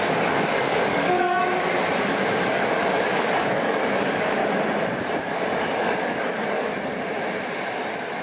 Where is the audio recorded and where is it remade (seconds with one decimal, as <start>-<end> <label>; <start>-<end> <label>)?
0.0-1.4 remade; 1.4-2.5 recorded; 2.5-4.4 remade; 4.4-5.2 recorded; 5.2-6.7 remade; 6.7-8.2 recorded